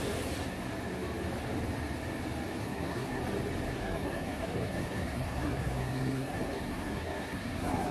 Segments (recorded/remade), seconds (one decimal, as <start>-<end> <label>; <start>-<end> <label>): 0.0-2.6 recorded; 2.6-3.2 remade; 3.2-3.7 recorded; 3.7-7.9 remade